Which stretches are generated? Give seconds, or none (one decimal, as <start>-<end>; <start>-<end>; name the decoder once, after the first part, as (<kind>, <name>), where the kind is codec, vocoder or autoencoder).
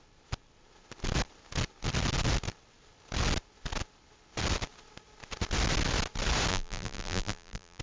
6.5-7.8 (vocoder, BigVGAN v2)